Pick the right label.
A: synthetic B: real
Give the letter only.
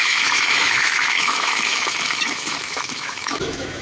A